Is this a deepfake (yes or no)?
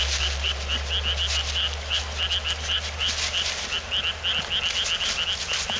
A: no